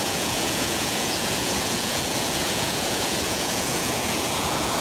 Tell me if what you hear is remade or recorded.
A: remade